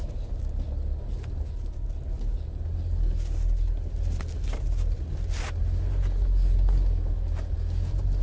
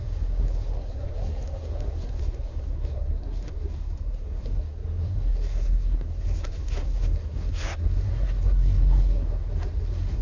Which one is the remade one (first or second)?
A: second